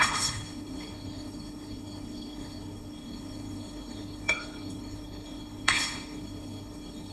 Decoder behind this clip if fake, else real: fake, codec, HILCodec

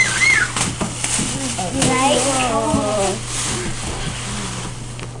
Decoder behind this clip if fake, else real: real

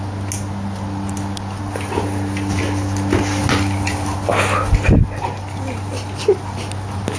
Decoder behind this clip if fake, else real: real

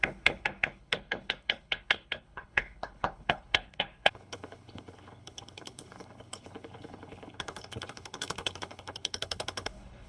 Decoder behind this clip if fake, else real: fake, codec, HILCodec